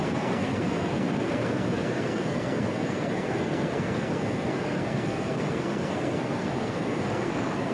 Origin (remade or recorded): remade